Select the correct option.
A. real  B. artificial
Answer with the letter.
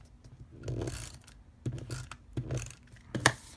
A